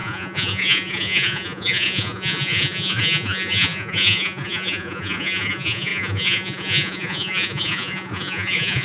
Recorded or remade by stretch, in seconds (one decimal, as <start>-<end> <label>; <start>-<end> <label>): 0.0-8.8 remade